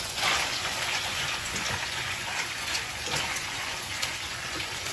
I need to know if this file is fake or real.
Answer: fake